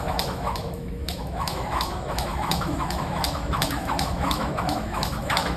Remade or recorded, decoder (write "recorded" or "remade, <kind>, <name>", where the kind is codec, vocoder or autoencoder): remade, autoencoder, DAC-VAE